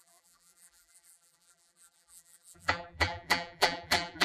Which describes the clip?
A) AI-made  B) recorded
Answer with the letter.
A